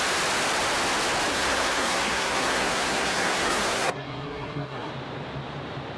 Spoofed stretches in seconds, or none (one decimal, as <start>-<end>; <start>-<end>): 1.3-4.9